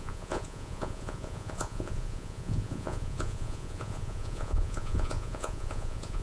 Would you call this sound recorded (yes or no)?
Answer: no